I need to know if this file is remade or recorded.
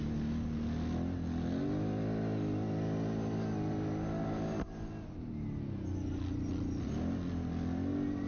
recorded